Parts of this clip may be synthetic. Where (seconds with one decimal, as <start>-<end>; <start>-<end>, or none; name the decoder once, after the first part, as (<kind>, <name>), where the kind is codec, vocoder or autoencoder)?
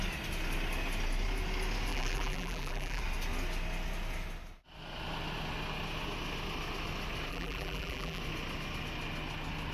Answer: 1.9-3.0 (vocoder, BigVGAN v2); 7.3-8.2